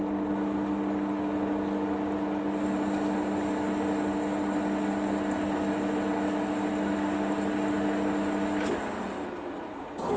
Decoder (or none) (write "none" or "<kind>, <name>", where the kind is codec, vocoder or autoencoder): none